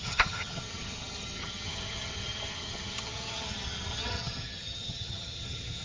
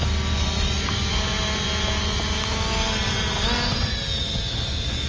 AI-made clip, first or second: first